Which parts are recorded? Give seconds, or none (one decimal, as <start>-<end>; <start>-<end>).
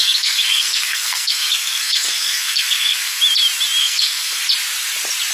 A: 3.2-3.8; 4.4-5.3